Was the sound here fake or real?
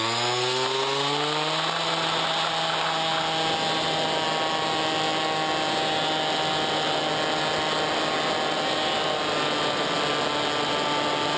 real